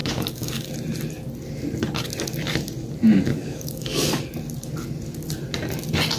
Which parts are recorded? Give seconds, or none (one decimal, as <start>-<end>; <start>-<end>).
0.7-3.3; 4.2-6.2